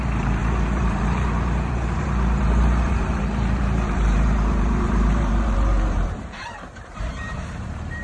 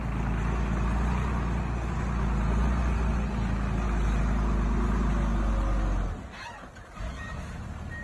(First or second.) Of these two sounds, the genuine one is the second